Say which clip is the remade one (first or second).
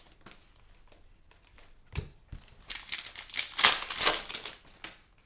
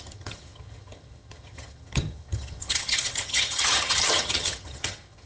second